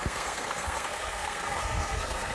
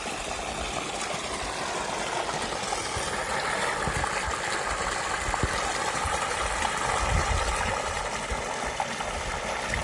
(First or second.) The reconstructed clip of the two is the first